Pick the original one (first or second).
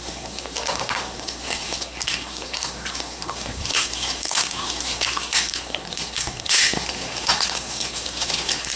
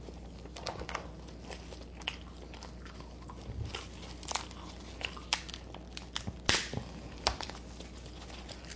second